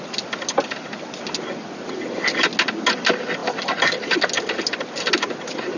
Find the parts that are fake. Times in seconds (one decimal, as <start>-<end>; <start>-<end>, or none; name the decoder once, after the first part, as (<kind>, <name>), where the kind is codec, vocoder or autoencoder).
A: none